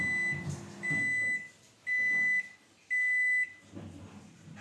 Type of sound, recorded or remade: recorded